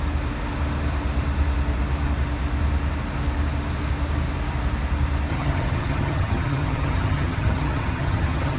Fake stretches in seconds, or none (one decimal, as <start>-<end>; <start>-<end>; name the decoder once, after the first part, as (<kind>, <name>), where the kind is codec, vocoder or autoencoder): 5.3-8.6 (vocoder, HiFi-GAN)